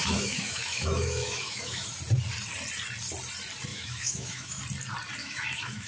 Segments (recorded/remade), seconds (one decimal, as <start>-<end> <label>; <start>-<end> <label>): 0.0-1.9 remade; 1.9-3.7 recorded; 3.7-4.6 remade; 4.6-5.2 recorded; 5.2-5.9 remade